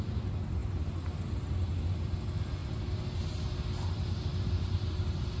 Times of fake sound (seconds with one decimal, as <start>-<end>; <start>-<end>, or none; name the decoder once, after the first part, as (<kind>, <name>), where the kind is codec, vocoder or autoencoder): none